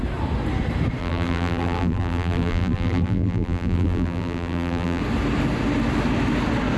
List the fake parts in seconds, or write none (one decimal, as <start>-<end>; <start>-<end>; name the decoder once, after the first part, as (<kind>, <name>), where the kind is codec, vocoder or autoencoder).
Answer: 1.0-5.0 (vocoder, BigVGAN v2)

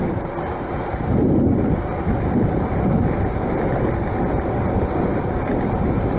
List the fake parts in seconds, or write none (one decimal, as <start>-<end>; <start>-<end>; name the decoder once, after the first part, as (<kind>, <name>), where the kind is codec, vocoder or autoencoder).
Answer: 0.0-1.0 (vocoder, BigVGAN v2)

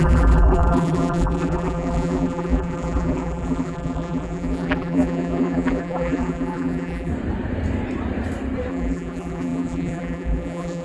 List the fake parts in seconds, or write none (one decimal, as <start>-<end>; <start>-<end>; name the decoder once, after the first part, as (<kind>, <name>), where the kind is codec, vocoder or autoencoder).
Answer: 0.0-7.1 (vocoder, BigVGAN v2); 8.7-10.8

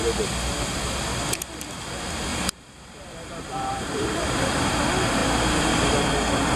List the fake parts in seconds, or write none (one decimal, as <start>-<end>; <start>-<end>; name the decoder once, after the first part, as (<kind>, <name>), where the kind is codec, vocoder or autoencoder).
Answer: 2.3-4.8 (vocoder, BigVGAN v2)

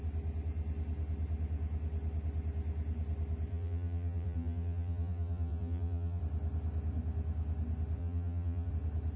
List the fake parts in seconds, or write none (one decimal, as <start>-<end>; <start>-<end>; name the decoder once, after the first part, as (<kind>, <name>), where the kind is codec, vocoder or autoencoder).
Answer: 3.5-6.2 (vocoder, BigVGAN v2); 8.0-8.7

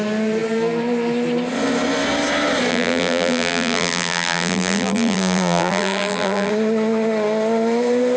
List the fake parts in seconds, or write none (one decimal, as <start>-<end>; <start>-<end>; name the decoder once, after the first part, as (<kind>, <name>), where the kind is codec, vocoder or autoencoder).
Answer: 2.7-6.5 (vocoder, BigVGAN v2)

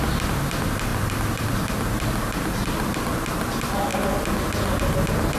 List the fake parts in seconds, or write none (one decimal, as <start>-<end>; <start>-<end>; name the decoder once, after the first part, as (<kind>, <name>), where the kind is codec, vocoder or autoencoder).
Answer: 0.9-2.9 (vocoder, BigVGAN v2)